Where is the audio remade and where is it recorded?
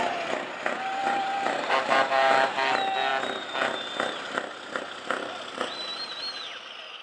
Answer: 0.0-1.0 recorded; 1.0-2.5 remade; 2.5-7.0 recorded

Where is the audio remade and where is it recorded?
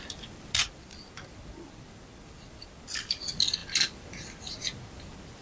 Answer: 0.0-5.4 recorded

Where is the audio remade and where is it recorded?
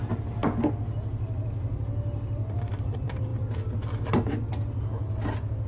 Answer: 0.0-0.4 remade; 0.4-2.6 recorded; 2.6-3.3 remade; 3.3-5.7 recorded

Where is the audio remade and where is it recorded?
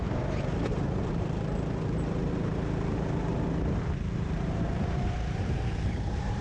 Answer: 0.0-3.3 remade; 3.3-3.9 recorded; 3.9-6.4 remade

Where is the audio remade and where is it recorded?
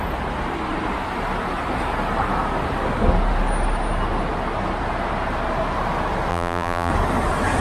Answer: 0.0-6.3 recorded; 6.3-6.9 remade; 6.9-7.6 recorded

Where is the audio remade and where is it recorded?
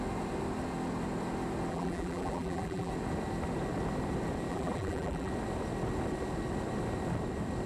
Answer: 0.0-1.7 recorded; 1.7-2.9 remade; 2.9-4.5 recorded; 4.5-5.3 remade; 5.3-7.7 recorded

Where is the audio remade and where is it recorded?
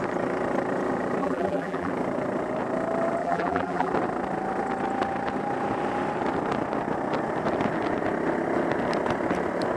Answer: 0.0-1.2 recorded; 1.2-1.9 remade; 1.9-3.2 recorded; 3.2-3.9 remade; 3.9-9.8 recorded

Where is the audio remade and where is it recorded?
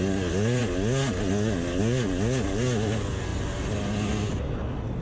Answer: 0.0-5.0 recorded